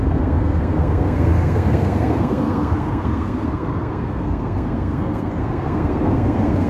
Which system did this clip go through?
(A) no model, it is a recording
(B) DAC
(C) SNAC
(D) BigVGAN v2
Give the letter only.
C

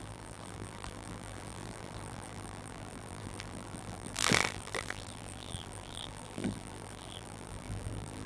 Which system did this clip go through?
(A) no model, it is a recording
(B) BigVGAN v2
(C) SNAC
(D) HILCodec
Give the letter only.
B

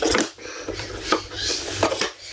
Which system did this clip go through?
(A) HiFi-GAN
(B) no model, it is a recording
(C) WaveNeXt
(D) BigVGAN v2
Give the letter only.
D